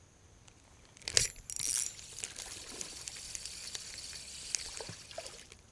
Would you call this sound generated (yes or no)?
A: no